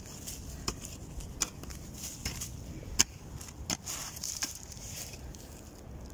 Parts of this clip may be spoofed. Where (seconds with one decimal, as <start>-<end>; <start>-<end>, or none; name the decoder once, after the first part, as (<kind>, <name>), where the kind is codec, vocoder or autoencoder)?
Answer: 4.0-5.2 (vocoder, BigVGAN v2)